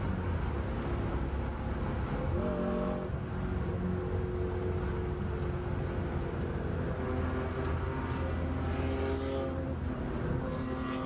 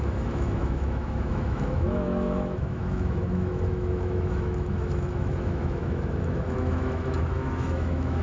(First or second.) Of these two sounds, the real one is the first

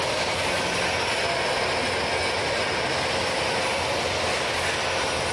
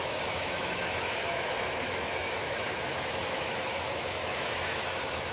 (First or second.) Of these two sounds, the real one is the first